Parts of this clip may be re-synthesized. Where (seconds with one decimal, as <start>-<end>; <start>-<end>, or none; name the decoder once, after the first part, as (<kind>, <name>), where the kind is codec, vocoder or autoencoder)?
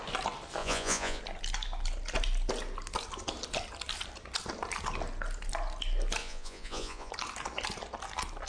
0.6-1.2 (vocoder, Vocos); 6.2-7.1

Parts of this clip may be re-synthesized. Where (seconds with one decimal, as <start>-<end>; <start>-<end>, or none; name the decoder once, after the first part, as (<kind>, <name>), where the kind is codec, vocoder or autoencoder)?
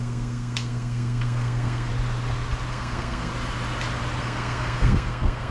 0.0-1.9 (codec, SNAC); 2.7-3.3; 4.2-5.5